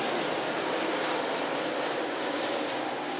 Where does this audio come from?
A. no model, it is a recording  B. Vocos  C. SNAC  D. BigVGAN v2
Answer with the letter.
D